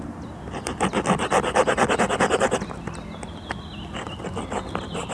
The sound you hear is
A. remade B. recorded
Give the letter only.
B